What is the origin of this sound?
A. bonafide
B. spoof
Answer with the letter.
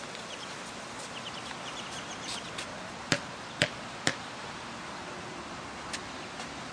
A